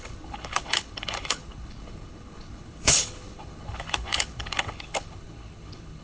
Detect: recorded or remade remade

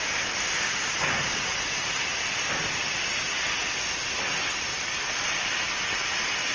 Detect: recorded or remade recorded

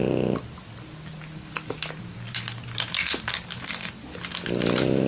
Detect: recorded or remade recorded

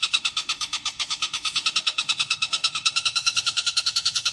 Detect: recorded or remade remade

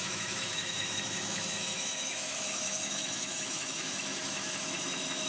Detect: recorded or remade remade